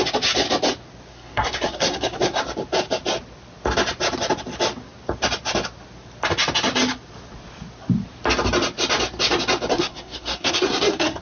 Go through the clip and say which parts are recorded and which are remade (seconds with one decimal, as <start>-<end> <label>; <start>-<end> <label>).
0.0-1.1 recorded; 1.1-2.4 remade; 2.4-9.7 recorded; 9.7-11.2 remade